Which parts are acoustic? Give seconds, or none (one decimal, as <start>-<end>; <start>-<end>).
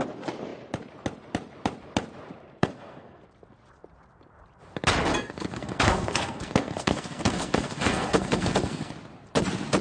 0.0-2.6; 3.2-5.1; 8.9-9.8